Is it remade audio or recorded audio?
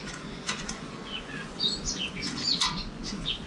remade